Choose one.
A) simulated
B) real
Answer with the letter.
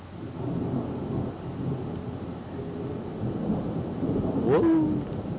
B